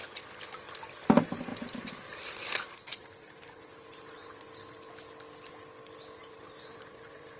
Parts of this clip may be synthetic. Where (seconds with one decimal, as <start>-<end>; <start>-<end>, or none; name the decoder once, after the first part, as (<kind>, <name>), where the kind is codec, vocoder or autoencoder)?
1.5-4.4 (vocoder, BigVGAN v2); 6.2-7.4